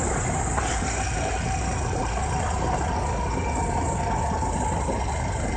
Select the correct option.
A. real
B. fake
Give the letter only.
A